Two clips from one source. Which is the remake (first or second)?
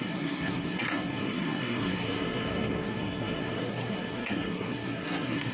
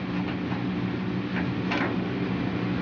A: first